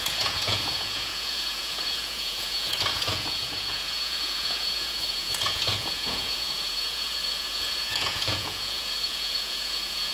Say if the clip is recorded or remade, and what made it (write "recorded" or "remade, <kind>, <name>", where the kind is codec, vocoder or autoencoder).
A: remade, vocoder, Vocos